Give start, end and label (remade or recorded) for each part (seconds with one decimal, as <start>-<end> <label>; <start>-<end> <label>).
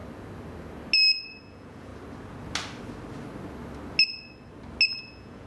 0.0-1.2 recorded; 1.2-1.9 remade; 1.9-5.0 recorded; 5.0-5.5 remade